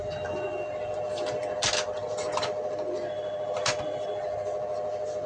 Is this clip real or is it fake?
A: real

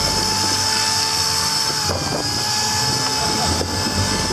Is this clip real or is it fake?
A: real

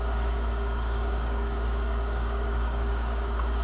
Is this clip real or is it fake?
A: fake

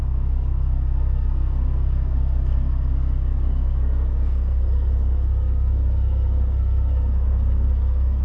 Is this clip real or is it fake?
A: fake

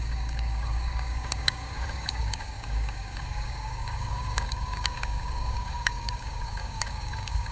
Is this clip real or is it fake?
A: fake